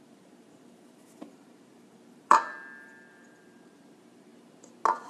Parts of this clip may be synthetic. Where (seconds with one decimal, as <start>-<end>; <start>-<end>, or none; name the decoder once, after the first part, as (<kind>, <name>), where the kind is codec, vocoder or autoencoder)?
0.0-2.5 (vocoder, BigVGAN v2); 3.1-4.3